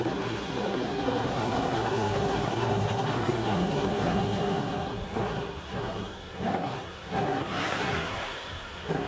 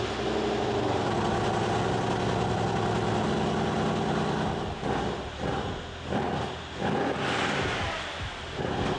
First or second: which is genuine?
second